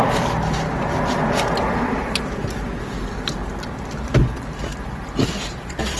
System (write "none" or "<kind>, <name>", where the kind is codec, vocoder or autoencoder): none